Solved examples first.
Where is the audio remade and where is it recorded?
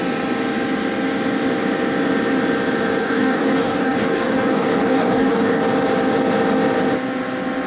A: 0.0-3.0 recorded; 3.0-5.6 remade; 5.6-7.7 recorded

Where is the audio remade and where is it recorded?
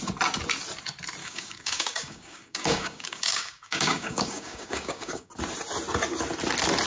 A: 0.0-1.2 recorded; 1.2-5.3 remade; 5.3-6.9 recorded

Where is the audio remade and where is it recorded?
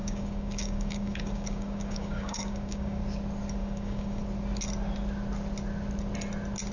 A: 0.0-3.0 remade; 3.0-3.6 recorded; 3.6-4.2 remade; 4.2-6.7 recorded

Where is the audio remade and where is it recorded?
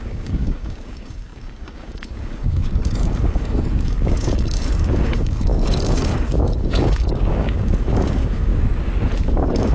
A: 0.0-8.5 remade; 8.5-9.2 recorded; 9.2-9.7 remade